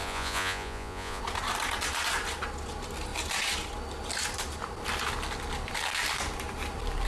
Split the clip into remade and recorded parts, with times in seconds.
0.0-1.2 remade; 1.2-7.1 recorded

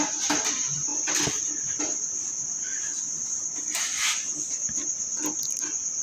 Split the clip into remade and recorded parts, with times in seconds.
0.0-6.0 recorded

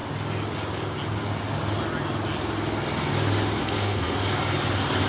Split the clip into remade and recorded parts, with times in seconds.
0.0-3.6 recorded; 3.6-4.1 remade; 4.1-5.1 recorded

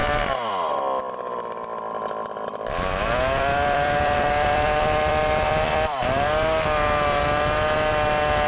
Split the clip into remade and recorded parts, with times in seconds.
0.0-0.5 remade; 0.5-1.0 recorded; 1.0-6.0 remade; 6.0-8.5 recorded

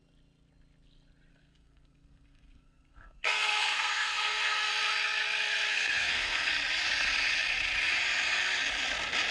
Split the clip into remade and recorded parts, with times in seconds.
0.0-1.3 recorded; 1.3-4.7 remade; 4.7-5.7 recorded; 5.7-6.5 remade; 6.5-9.3 recorded